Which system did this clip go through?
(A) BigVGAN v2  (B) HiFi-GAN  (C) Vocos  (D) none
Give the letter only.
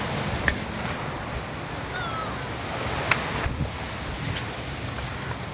D